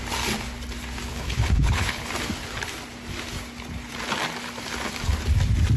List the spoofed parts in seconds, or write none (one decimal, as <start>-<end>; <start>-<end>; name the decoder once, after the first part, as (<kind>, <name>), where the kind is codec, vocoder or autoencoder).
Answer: 1.1-2.1 (codec, HILCodec)